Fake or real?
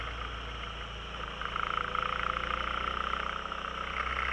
real